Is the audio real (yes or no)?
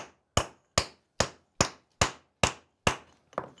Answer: yes